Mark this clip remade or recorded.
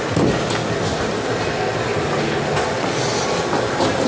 recorded